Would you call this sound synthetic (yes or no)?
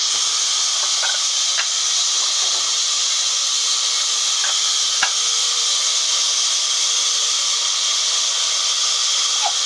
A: no